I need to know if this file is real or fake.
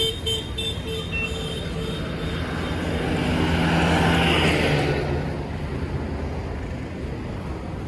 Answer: real